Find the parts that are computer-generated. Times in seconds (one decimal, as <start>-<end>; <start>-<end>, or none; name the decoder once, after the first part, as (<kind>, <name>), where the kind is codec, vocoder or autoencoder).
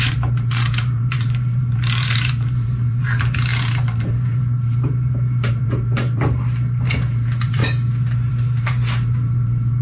0.0-7.6 (vocoder, BigVGAN v2); 8.3-9.8